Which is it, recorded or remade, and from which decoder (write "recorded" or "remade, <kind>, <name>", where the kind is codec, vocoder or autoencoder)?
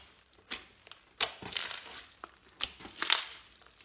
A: recorded